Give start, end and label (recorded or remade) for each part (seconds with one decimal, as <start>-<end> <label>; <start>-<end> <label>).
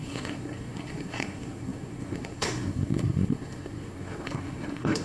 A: 0.0-5.0 remade